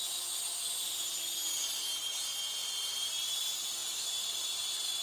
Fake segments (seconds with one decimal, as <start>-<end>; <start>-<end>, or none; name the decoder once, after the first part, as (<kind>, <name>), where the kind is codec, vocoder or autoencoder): 2.6-3.1 (vocoder, BigVGAN v2); 3.8-4.3